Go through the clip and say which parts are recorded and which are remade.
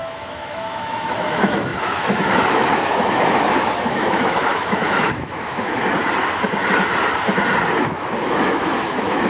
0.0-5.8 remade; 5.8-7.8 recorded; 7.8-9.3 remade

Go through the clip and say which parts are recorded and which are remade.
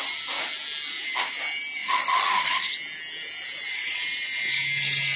0.0-5.2 recorded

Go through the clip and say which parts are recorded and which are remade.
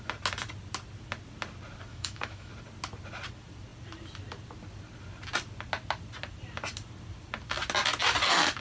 0.0-1.9 recorded; 1.9-2.5 remade; 2.5-8.6 recorded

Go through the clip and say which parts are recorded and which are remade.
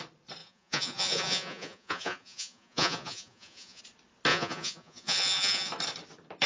0.0-0.4 recorded; 0.4-3.8 remade; 3.8-4.3 recorded; 4.3-5.7 remade; 5.7-6.5 recorded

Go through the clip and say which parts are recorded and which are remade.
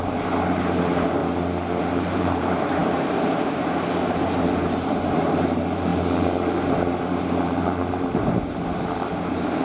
0.0-1.2 remade; 1.2-1.8 recorded; 1.8-5.9 remade; 5.9-6.6 recorded; 6.6-9.6 remade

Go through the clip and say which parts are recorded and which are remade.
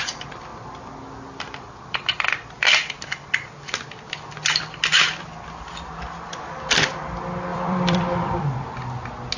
0.0-7.5 recorded; 7.5-8.4 remade; 8.4-9.4 recorded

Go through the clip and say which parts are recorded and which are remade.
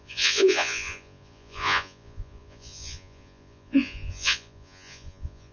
0.0-5.5 remade